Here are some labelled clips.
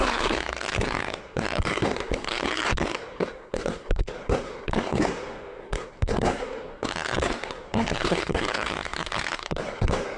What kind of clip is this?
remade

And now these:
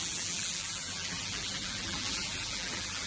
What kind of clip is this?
remade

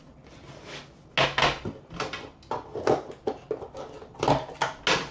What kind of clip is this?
recorded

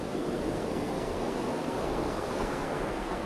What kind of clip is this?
remade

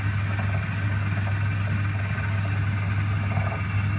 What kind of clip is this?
recorded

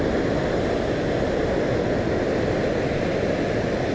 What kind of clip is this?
recorded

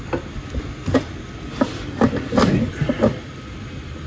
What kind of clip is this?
recorded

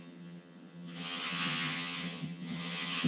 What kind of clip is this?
remade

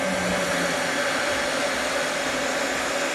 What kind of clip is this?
recorded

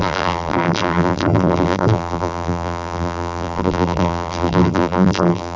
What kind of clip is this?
remade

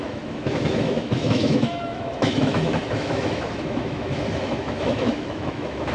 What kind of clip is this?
remade